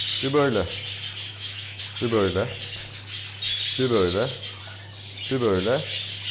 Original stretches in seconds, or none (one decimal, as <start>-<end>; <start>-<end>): 0.0-1.3; 1.8-6.3